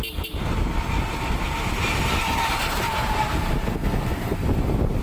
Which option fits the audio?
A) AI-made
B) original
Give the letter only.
B